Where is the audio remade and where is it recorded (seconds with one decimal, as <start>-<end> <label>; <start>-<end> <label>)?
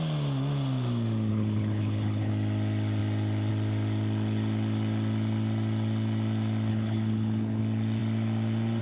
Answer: 0.0-1.3 recorded; 1.3-2.3 remade; 2.3-6.7 recorded; 6.7-7.6 remade; 7.6-8.8 recorded